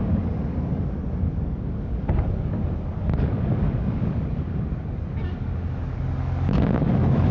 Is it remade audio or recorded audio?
remade